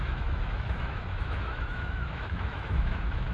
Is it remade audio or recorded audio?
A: remade